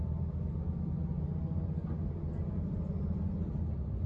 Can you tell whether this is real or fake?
real